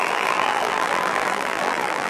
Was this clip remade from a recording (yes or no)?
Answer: yes